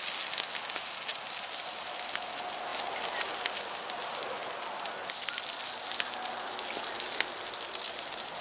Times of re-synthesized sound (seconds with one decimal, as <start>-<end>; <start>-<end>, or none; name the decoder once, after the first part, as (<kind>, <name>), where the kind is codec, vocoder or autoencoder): none